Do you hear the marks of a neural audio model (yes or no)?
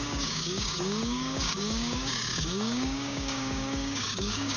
yes